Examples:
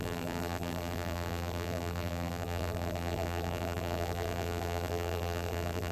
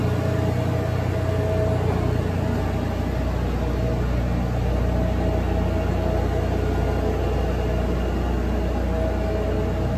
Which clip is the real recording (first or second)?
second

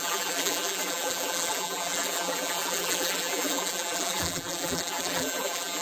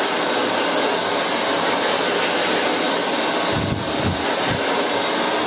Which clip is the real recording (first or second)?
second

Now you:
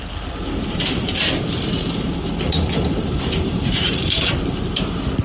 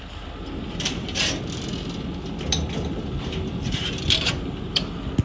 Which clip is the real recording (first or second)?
second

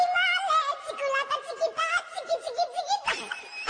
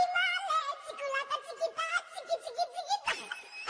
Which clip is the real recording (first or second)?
first